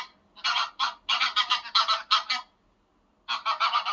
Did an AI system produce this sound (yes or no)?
no